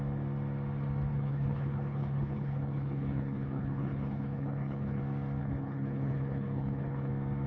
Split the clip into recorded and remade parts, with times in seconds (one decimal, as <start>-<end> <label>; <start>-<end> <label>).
0.0-1.1 recorded; 1.1-5.0 remade; 5.0-5.4 recorded; 5.4-7.1 remade; 7.1-7.5 recorded